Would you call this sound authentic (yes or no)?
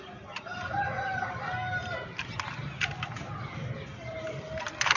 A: yes